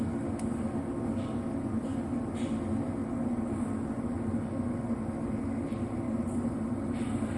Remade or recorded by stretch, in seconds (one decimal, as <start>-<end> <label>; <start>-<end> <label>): 0.0-7.4 recorded